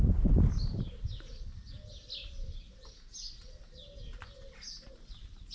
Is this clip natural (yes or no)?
yes